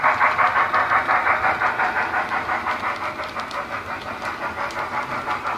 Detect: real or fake real